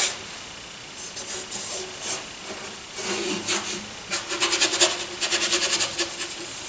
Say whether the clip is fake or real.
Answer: real